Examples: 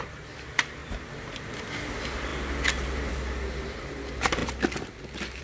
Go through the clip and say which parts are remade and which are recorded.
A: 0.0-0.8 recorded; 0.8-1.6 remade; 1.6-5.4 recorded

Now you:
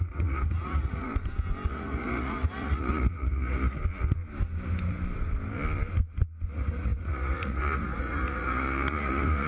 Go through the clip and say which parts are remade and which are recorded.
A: 0.0-1.1 remade; 1.1-1.7 recorded; 1.7-3.8 remade; 3.8-6.5 recorded; 6.5-9.5 remade

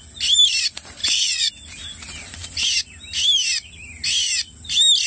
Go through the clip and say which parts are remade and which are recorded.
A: 0.0-1.0 recorded; 1.0-1.5 remade; 1.5-5.1 recorded

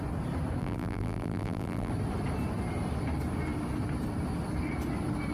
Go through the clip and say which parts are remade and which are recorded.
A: 0.0-0.6 recorded; 0.6-1.9 remade; 1.9-5.3 recorded

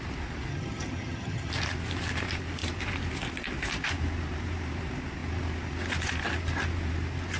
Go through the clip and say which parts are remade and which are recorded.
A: 0.0-0.5 recorded; 0.5-1.5 remade; 1.5-7.4 recorded

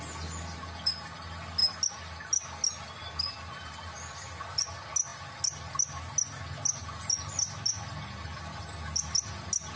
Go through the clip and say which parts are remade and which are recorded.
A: 0.0-9.8 recorded

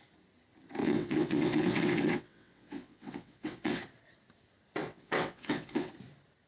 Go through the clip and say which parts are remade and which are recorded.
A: 0.0-0.8 recorded; 0.8-3.8 remade; 3.8-4.8 recorded; 4.8-5.9 remade; 5.9-6.5 recorded

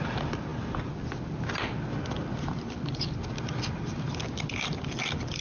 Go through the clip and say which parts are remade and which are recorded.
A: 0.0-5.4 recorded